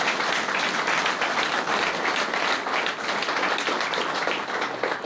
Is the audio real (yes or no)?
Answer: yes